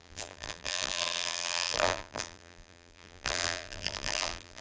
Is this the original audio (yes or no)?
no